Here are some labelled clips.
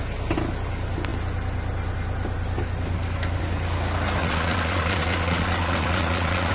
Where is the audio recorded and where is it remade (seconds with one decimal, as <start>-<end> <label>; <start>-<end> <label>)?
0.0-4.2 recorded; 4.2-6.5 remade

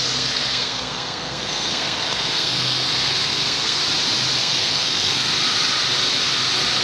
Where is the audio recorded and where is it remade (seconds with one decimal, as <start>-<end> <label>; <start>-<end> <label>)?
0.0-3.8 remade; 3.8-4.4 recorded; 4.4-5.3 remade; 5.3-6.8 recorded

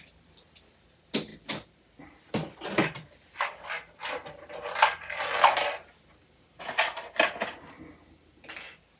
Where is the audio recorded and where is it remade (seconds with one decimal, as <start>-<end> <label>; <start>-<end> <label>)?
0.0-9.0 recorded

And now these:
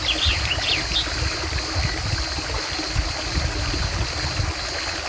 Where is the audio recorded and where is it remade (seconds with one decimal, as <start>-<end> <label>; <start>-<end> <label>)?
0.0-5.1 recorded